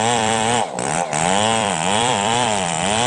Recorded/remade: remade